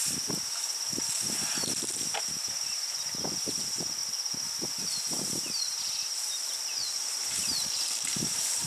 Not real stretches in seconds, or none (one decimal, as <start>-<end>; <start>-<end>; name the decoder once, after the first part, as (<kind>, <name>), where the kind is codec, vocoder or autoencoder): 4.0-6.5 (vocoder, BigVGAN v2)